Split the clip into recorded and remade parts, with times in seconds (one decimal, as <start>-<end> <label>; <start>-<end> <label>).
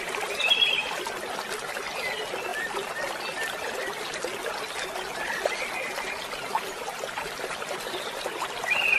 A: 0.0-9.0 recorded